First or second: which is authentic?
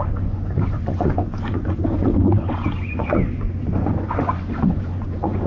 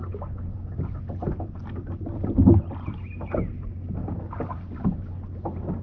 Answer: second